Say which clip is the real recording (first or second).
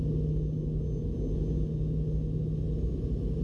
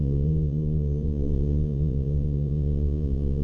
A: first